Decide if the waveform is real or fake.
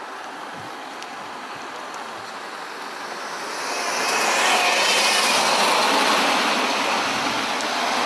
real